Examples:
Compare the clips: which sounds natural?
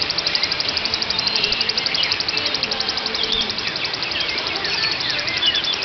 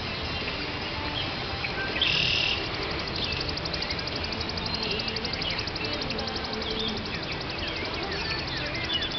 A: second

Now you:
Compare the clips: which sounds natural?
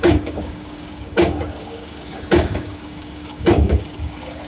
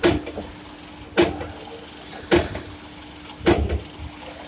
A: second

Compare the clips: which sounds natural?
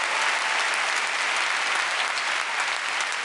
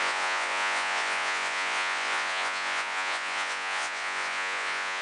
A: first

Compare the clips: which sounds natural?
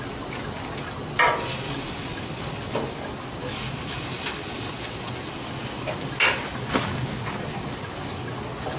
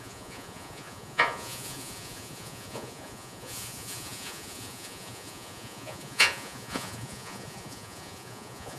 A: first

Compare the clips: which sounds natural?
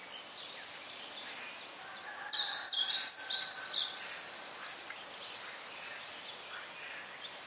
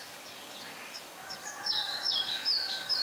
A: first